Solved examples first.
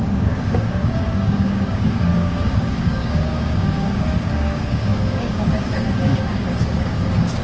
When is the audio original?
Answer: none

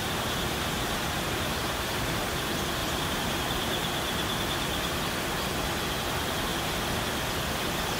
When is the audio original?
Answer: 0.0-1.6; 2.3-2.8; 3.4-8.0

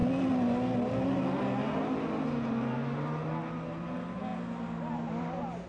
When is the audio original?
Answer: 0.0-5.7

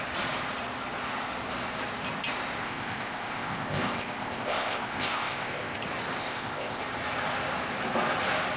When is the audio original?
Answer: 0.0-2.6; 5.8-6.2; 6.8-8.6

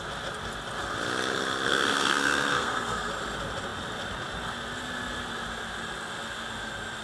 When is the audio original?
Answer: 0.0-1.7; 3.1-7.0

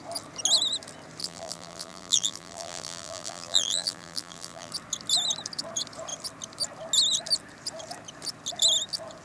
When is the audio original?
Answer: 0.0-1.2; 4.7-9.2